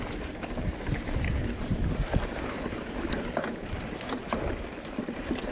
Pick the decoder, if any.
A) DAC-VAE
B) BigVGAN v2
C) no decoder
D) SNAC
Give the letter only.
C